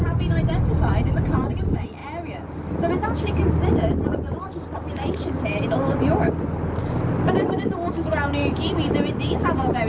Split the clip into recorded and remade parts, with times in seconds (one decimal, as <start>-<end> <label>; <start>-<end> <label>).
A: 0.0-9.9 recorded